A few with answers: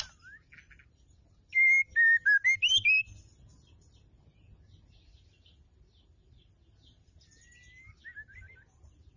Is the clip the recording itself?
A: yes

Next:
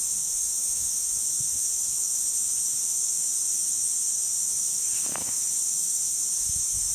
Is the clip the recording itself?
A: no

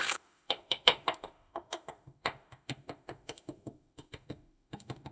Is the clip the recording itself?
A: no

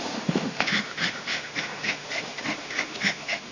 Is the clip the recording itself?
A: no